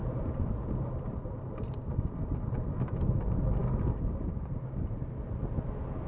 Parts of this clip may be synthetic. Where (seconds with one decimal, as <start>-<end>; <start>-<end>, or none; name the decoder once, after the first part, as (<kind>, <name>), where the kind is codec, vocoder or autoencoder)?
none